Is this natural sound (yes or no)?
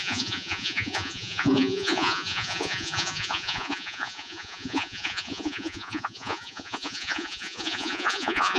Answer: no